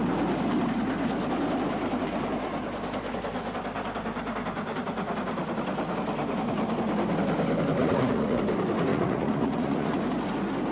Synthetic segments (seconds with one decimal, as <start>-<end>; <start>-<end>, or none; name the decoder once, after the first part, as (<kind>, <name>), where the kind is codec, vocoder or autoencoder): 7.8-8.4 (vocoder, Vocos); 8.9-10.0